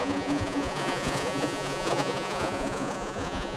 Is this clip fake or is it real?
fake